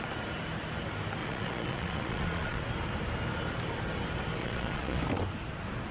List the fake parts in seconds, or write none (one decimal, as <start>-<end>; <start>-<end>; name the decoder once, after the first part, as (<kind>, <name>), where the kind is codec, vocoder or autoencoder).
1.2-2.6 (vocoder, Vocos); 4.4-5.0